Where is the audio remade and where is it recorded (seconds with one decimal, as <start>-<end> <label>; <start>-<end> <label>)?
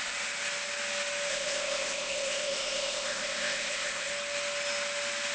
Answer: 0.0-1.3 recorded; 1.3-4.1 remade; 4.1-5.3 recorded